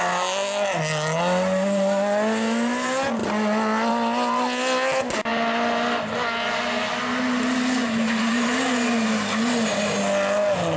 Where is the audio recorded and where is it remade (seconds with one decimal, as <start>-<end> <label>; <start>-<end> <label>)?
0.0-10.8 recorded